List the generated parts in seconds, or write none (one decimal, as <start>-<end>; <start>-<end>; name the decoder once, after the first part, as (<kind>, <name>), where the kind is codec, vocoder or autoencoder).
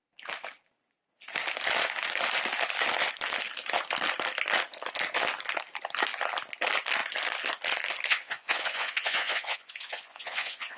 8.1-10.8 (vocoder, Vocos)